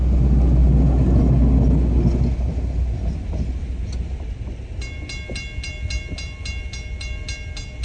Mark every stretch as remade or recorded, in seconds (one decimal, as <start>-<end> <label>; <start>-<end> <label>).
0.0-7.8 recorded